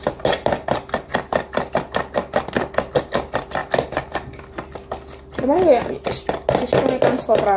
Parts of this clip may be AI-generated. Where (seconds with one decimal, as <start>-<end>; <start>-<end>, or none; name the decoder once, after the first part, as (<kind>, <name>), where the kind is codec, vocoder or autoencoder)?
none